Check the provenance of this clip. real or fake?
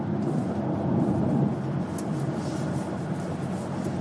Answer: real